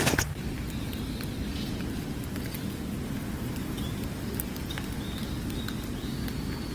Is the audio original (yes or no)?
yes